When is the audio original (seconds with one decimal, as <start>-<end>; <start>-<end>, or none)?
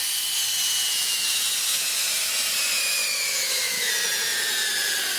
0.0-0.9; 2.3-3.0; 3.9-5.2